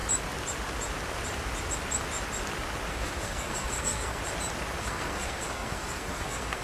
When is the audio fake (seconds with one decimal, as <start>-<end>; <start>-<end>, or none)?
2.9-4.2; 4.8-6.6